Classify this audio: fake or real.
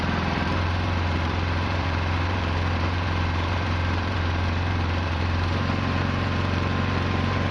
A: fake